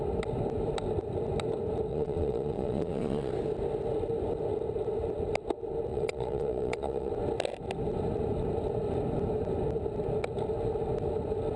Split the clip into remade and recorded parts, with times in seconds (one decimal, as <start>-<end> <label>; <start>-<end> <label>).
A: 0.0-1.9 recorded; 1.9-3.3 remade; 3.3-5.9 recorded; 5.9-7.1 remade; 7.1-11.6 recorded